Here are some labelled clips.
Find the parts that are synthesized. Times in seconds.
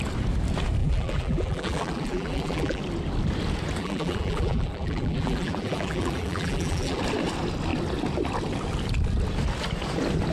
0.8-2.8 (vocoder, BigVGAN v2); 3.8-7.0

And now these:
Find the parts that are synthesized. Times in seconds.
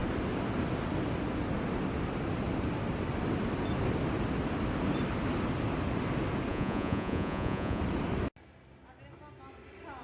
6.5-7.8 (vocoder, Vocos)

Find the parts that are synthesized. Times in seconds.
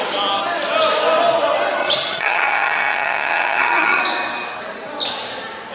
1.8-4.0 (vocoder, HiFi-GAN)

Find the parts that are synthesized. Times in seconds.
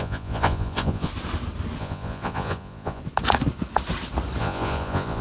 0.0-1.1 (vocoder, Vocos); 1.8-3.0; 4.4-5.2